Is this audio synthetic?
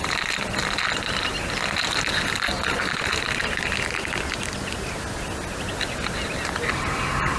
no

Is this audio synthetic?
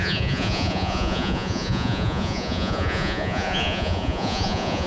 yes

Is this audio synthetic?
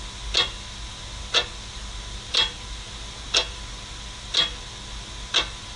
no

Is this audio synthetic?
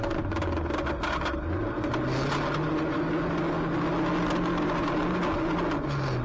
no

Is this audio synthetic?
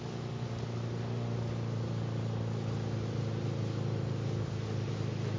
no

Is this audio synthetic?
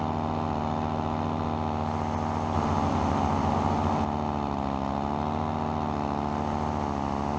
no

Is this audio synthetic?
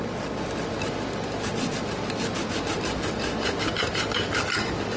no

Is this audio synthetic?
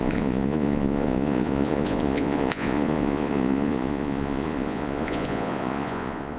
yes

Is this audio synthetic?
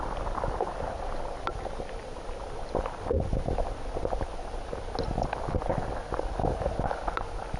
no